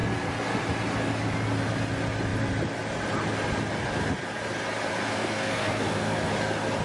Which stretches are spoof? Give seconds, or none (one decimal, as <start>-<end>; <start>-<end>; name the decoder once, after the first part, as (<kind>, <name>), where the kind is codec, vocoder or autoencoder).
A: 5.1-6.3 (codec, SNAC)